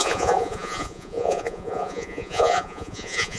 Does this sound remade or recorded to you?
remade